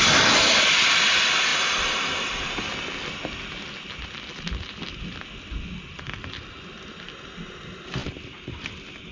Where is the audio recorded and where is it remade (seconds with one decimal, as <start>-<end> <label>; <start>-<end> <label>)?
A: 0.0-9.1 recorded

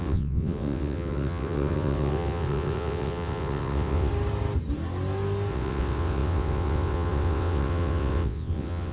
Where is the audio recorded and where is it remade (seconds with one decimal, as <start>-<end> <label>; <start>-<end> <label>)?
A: 0.0-4.1 remade; 4.1-5.5 recorded; 5.5-8.9 remade

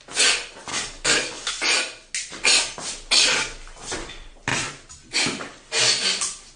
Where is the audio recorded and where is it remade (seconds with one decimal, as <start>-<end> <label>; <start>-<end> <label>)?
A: 0.0-0.7 recorded; 0.7-1.5 remade; 1.5-6.6 recorded

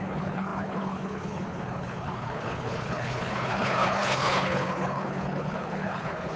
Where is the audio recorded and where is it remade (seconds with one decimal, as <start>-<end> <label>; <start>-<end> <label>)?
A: 0.0-6.4 remade

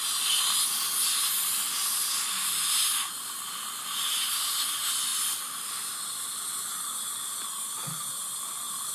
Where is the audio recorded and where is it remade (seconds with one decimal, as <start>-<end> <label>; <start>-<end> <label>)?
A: 0.0-8.9 recorded

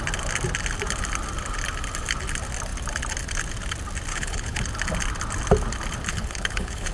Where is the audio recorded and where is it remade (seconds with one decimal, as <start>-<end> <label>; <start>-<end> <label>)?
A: 0.0-4.1 recorded; 4.1-4.6 remade; 4.6-6.1 recorded; 6.1-6.9 remade

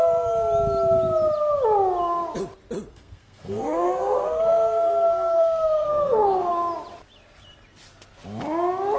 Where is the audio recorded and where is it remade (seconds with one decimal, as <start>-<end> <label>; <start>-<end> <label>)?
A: 0.0-2.9 recorded; 2.9-6.5 remade; 6.5-9.0 recorded

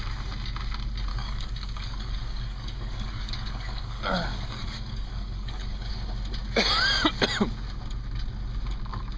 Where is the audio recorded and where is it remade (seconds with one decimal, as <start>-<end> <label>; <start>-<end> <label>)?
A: 0.0-1.1 recorded; 1.1-5.9 remade; 5.9-9.2 recorded